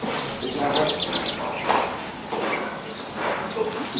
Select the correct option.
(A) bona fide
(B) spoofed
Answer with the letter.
A